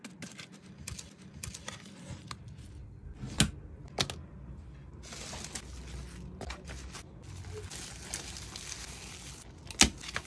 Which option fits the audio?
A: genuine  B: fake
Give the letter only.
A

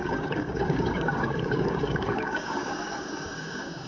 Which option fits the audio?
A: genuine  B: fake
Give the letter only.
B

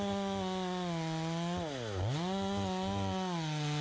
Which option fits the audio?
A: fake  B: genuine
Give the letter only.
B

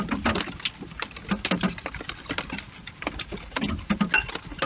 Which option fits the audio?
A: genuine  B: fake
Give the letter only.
A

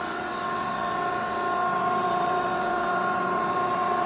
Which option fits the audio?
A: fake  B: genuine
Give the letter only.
A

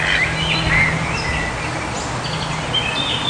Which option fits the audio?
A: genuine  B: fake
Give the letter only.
A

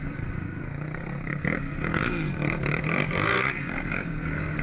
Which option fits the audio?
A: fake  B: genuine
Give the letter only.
A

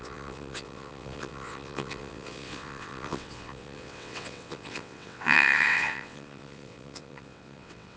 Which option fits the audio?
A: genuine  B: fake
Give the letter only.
B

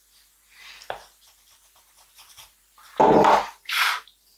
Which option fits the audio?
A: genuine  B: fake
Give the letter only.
A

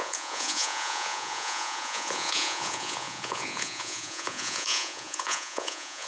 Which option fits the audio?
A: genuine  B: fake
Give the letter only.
B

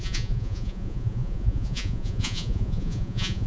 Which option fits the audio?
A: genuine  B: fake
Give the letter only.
B